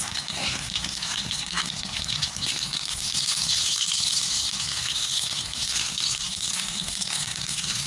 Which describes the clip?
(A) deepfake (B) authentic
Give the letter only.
A